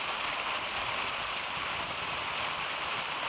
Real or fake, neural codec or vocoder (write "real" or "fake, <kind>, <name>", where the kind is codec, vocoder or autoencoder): fake, vocoder, BigVGAN v2